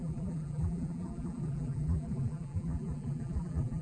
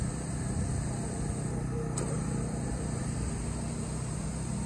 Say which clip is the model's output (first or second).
first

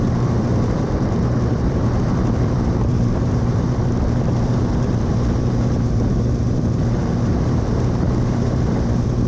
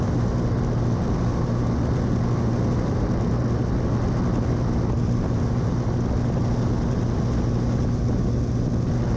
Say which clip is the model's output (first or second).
first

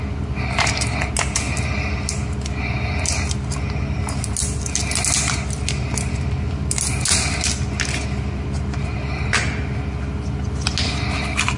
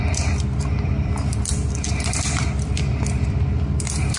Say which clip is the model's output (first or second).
second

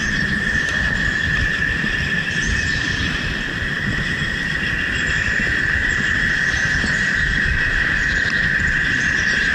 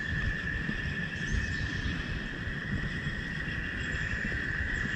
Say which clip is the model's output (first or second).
first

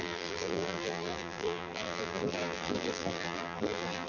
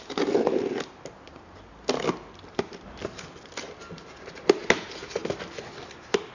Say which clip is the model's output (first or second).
first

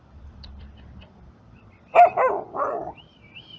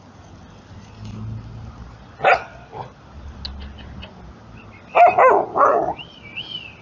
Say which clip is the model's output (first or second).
first